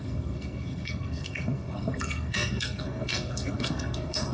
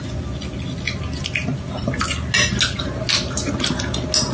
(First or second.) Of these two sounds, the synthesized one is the first